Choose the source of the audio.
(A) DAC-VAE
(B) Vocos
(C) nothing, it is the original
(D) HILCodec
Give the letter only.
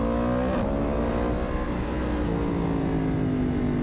C